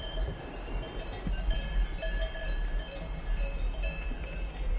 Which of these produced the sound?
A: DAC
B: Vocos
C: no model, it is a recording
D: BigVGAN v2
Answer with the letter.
D